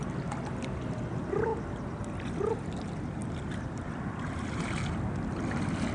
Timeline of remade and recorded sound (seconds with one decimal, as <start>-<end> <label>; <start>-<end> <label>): 0.0-5.9 recorded